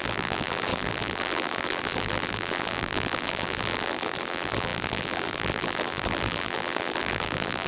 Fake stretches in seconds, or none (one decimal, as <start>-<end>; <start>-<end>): 0.0-7.7